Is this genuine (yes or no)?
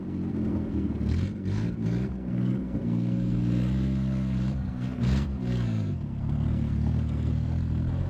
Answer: no